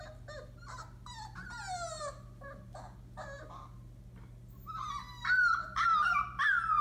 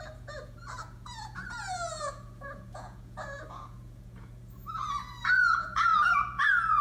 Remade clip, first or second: second